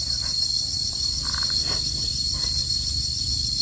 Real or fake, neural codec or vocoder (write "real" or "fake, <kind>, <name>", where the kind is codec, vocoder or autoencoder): real